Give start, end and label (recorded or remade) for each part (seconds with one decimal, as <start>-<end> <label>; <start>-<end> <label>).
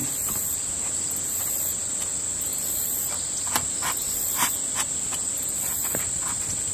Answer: 0.0-6.7 recorded